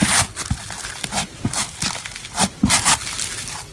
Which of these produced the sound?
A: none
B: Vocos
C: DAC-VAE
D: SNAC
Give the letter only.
A